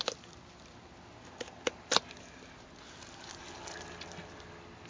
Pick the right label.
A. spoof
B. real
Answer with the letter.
B